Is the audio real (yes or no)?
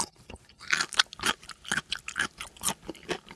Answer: yes